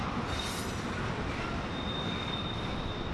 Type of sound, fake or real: real